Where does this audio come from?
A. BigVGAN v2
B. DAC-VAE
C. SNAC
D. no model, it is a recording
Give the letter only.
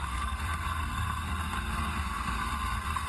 C